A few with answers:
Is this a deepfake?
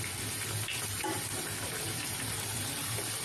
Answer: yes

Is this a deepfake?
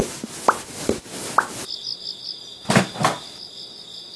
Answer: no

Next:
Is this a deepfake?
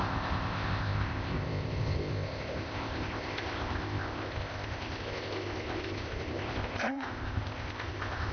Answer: yes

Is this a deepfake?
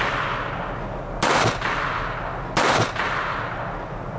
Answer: no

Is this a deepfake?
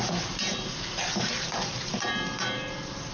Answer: yes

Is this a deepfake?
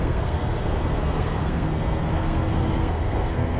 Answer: yes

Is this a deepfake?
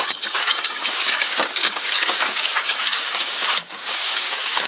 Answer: yes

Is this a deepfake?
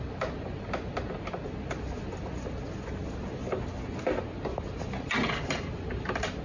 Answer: no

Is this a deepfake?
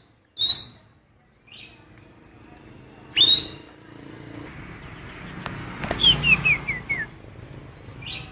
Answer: no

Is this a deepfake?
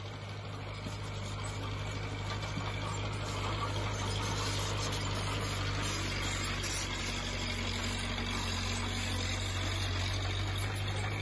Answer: no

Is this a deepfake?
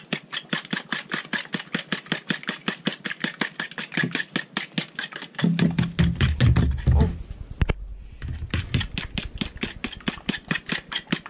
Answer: no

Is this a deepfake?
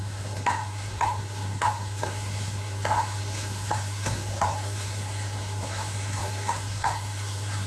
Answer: yes